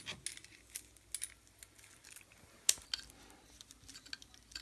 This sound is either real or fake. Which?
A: real